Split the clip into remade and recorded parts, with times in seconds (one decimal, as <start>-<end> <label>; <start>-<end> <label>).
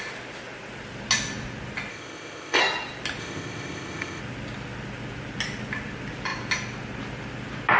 0.0-1.9 recorded; 1.9-2.6 remade; 2.6-3.2 recorded; 3.2-4.2 remade; 4.2-7.8 recorded